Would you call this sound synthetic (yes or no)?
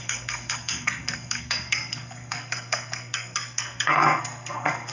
yes